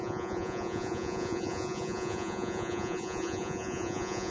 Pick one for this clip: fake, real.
fake